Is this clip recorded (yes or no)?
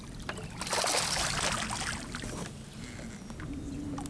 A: yes